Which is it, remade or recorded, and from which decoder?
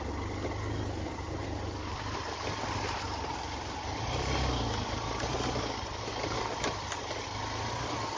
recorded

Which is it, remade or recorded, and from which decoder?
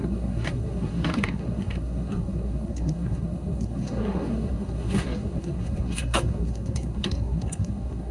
remade, codec, SNAC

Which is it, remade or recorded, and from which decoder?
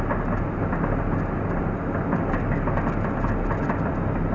recorded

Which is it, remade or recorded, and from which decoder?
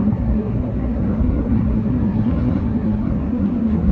remade, codec, SNAC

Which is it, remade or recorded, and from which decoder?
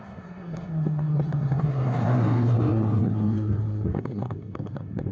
remade, codec, SNAC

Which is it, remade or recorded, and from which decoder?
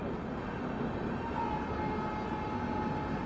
recorded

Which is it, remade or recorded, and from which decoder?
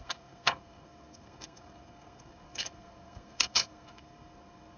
remade, codec, SNAC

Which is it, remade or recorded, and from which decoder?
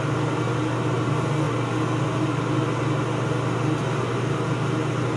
recorded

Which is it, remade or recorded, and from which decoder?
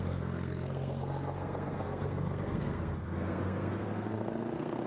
remade, codec, SNAC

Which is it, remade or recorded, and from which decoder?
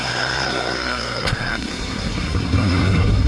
remade, codec, SNAC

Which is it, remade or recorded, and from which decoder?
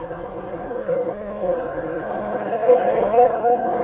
remade, codec, SNAC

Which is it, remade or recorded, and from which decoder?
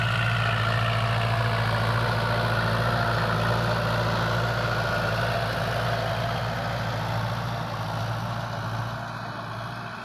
recorded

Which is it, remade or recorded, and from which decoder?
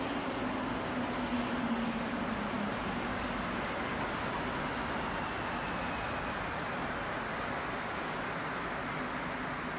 recorded